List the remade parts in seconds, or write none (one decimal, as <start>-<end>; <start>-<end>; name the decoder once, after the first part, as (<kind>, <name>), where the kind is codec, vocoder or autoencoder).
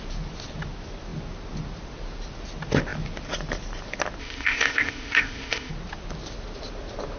4.2-5.7 (codec, ZipCodec)